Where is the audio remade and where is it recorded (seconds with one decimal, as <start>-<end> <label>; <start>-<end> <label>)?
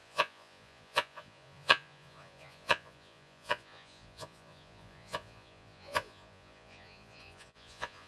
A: 0.0-8.1 remade